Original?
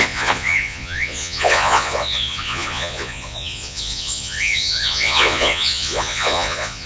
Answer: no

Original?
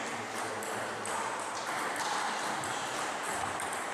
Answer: yes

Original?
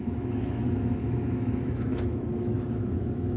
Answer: no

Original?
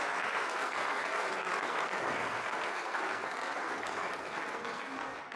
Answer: no